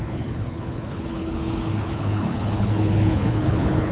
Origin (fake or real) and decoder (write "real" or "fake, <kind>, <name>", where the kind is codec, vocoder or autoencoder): fake, codec, HILCodec